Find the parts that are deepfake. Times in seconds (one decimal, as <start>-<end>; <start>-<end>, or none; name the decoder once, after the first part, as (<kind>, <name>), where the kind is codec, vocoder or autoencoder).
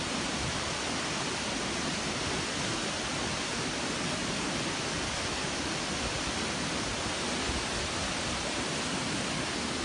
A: none